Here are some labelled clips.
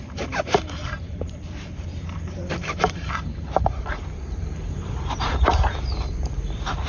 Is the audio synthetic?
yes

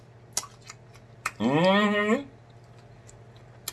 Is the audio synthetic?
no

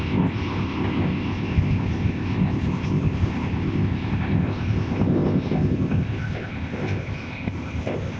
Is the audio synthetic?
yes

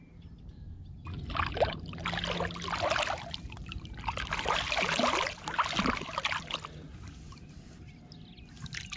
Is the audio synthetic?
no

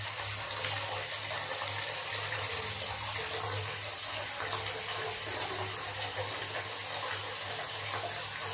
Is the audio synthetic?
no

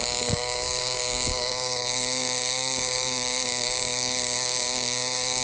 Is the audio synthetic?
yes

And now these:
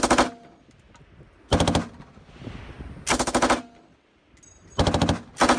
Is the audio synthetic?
no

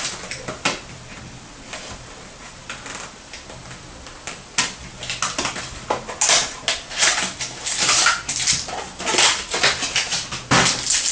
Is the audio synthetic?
no